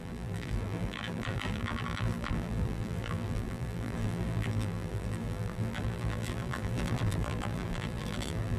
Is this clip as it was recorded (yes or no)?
no